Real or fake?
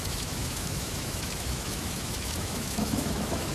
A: fake